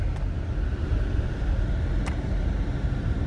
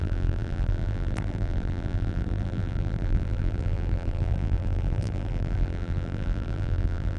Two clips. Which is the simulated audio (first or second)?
second